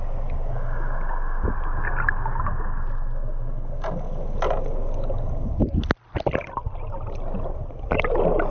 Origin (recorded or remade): recorded